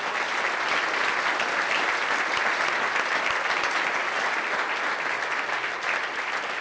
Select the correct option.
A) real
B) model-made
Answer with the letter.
A